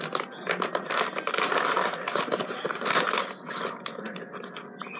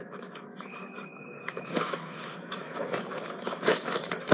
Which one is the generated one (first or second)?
second